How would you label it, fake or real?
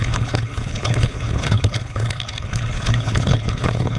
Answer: fake